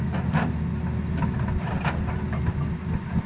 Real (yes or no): yes